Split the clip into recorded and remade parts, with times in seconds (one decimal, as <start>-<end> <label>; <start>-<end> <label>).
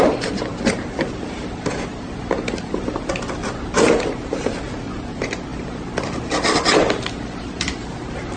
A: 0.0-8.4 recorded